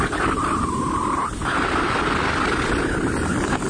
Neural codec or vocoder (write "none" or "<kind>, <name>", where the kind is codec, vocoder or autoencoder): none